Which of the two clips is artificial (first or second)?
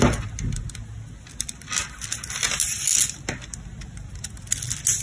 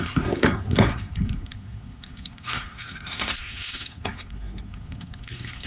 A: second